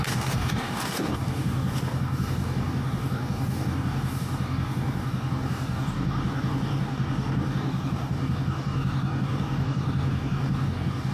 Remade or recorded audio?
remade